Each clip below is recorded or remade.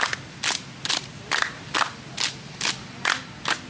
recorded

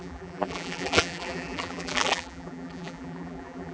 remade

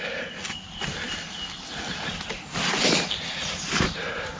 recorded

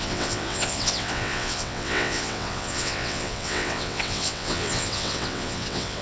remade